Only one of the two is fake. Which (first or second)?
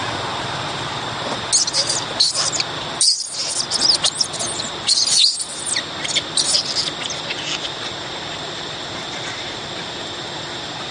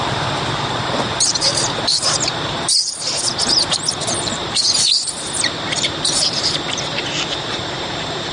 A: second